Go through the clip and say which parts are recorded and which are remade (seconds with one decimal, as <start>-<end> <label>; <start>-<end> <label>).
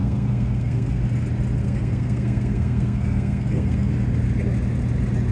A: 0.0-1.0 remade; 1.0-1.6 recorded; 1.6-3.9 remade; 3.9-5.3 recorded